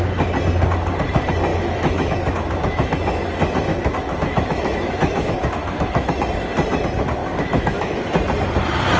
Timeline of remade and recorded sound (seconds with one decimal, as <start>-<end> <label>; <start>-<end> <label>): 0.0-1.5 recorded; 1.5-3.2 remade; 3.2-3.7 recorded; 3.7-6.2 remade; 6.2-7.2 recorded; 7.2-8.1 remade; 8.1-9.0 recorded